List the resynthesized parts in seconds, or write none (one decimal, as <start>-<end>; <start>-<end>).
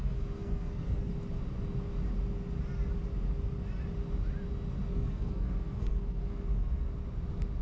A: 0.0-1.1; 4.9-6.9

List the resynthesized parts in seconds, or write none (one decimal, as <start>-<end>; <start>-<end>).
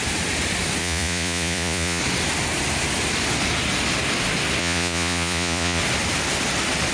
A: 0.8-2.0; 4.6-5.8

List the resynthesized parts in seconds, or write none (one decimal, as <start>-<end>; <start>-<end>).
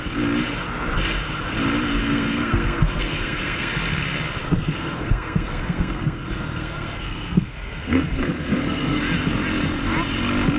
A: 2.0-3.8; 4.4-9.0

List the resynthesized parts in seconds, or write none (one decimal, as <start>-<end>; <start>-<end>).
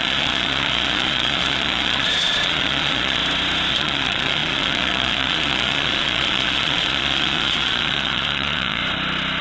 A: 0.0-3.2; 3.7-8.8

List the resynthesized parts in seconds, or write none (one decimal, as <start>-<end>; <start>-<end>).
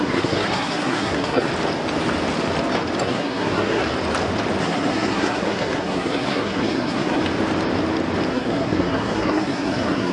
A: 0.0-1.5; 3.0-3.8; 4.6-7.2; 8.3-10.1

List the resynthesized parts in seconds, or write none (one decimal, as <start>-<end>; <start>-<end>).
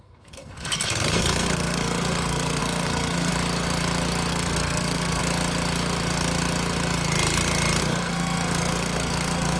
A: 0.0-3.3; 4.3-5.2; 7.8-9.6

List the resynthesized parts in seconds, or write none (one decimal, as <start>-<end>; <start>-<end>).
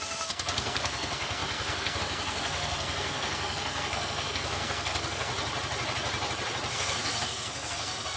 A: 0.0-5.3; 6.7-8.2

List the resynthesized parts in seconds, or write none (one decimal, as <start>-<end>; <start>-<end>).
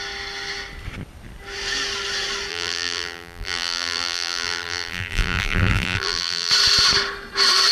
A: 2.5-6.5